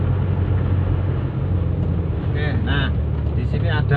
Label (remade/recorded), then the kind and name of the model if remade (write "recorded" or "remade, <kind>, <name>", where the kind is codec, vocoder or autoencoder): recorded